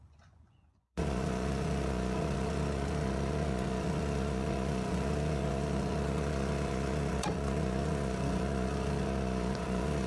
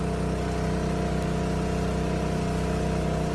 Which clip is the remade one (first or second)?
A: first